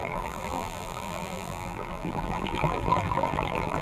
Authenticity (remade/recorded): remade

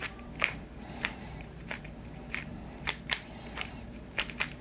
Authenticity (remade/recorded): remade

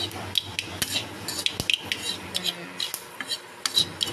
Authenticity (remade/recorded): recorded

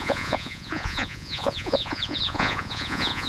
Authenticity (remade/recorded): remade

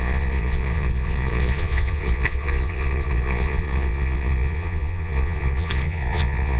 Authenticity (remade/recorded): remade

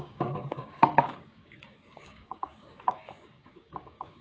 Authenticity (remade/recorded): remade